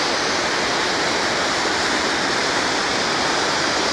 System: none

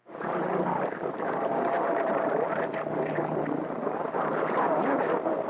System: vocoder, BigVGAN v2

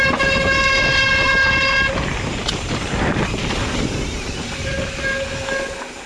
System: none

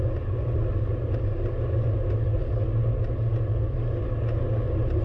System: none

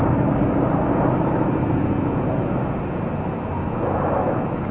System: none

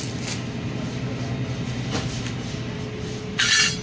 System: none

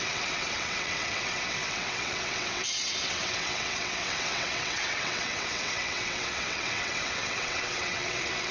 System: vocoder, WaveNeXt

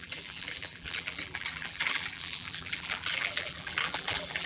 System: vocoder, BigVGAN v2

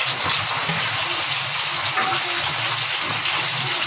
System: none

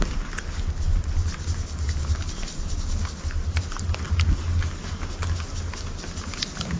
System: none